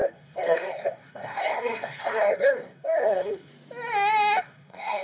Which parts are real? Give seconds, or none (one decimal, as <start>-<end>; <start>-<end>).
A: 3.5-4.4

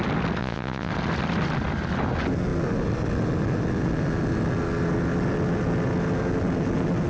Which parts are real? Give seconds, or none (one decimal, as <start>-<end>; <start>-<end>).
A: 0.0-0.4; 0.9-7.1

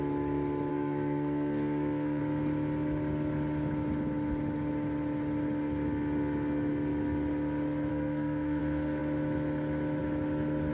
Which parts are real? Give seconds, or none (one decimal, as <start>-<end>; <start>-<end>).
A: 0.0-0.7; 2.2-7.9; 8.6-10.7

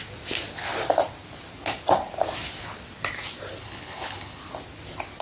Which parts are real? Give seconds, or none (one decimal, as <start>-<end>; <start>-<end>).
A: 0.0-3.6; 4.4-5.2

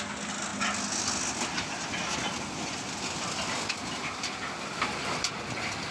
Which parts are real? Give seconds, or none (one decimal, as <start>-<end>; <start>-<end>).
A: 0.0-5.9